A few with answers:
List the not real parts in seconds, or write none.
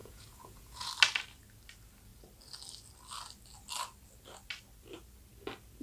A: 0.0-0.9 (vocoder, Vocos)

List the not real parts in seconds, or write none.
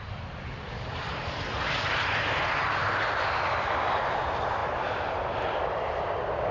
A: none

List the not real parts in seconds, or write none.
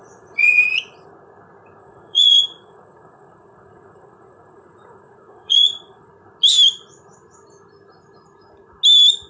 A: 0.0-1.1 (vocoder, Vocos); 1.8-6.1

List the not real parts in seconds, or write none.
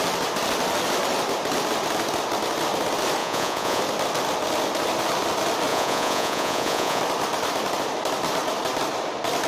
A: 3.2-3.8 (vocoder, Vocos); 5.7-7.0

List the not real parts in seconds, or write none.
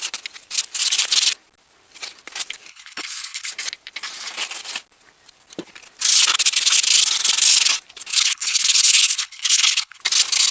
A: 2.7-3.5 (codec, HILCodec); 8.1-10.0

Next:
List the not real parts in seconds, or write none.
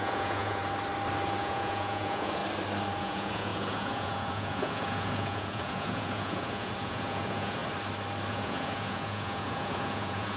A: 0.0-0.6 (vocoder, Vocos); 1.4-2.4; 3.0-7.6; 8.3-10.4